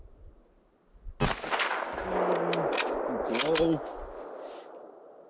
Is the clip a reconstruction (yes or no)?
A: no